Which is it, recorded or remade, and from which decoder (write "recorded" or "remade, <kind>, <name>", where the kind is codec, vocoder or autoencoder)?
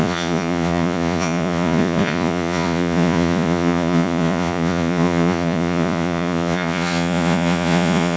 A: remade, vocoder, Vocos